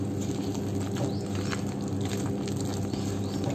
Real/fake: real